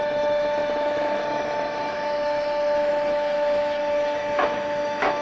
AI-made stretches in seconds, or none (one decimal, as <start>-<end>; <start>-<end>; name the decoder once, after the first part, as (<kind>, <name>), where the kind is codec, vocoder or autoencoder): 0.0-5.2 (autoencoder, DAC-VAE)

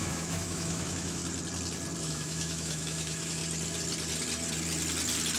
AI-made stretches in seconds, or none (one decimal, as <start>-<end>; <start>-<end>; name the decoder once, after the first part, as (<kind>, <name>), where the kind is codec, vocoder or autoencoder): 0.0-1.2 (autoencoder, DAC-VAE); 2.0-3.4

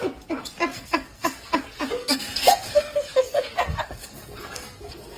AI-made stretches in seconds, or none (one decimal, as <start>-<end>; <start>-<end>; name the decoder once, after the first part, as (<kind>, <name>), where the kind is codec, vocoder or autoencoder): 0.7-1.6 (codec, SNAC); 2.0-5.2